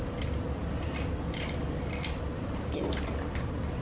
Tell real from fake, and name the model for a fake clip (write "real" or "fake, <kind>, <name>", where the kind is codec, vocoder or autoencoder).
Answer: real